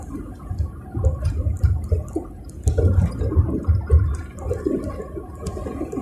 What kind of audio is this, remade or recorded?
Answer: recorded